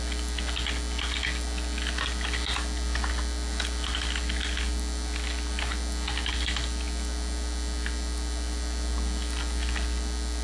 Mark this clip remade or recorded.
recorded